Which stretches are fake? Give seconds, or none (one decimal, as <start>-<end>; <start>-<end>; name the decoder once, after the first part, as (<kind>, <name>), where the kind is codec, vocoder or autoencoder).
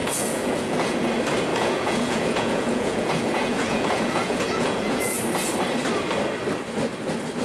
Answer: 0.0-1.1 (vocoder, Vocos); 1.5-5.2